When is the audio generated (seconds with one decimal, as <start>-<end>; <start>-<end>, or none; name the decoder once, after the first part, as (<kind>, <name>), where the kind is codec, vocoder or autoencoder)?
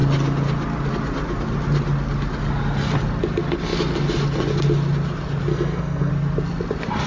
5.5-6.1 (codec, SNAC)